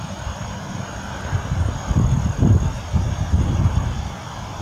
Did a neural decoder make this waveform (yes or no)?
no